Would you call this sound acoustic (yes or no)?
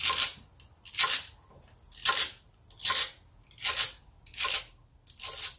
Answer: yes